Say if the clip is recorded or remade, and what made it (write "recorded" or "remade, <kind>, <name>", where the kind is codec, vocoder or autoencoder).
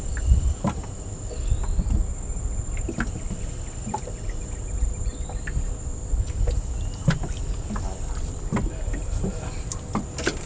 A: recorded